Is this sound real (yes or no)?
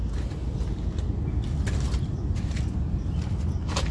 yes